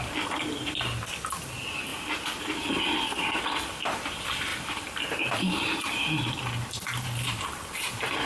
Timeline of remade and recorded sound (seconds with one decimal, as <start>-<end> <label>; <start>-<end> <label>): 0.0-4.5 recorded; 4.5-5.8 remade; 5.8-8.3 recorded